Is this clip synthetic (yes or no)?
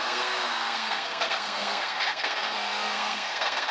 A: yes